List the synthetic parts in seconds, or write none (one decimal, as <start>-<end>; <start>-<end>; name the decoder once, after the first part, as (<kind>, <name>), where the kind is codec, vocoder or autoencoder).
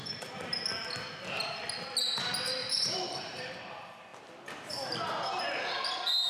2.6-3.5 (vocoder, BigVGAN v2)